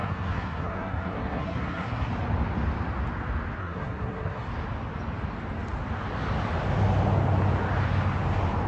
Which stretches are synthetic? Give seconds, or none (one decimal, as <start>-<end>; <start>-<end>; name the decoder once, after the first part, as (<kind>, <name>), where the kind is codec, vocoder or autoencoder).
0.0-2.1 (codec, SNAC); 3.6-4.5